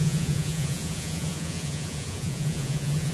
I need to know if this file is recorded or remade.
remade